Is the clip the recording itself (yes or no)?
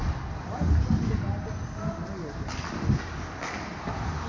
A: yes